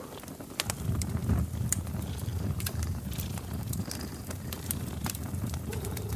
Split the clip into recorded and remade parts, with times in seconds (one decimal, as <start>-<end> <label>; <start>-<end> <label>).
0.0-2.3 recorded; 2.3-6.2 remade